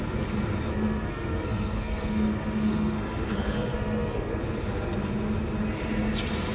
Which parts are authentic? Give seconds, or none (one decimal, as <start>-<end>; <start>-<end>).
0.0-0.7; 4.4-6.5